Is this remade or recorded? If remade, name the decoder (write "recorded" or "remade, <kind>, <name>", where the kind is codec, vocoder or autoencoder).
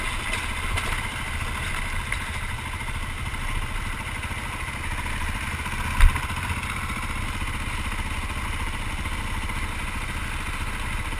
recorded